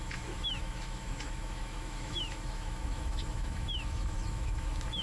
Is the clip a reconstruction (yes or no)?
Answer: yes